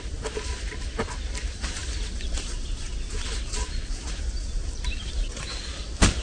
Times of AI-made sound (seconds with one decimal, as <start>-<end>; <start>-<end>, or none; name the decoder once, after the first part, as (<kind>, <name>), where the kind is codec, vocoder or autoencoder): none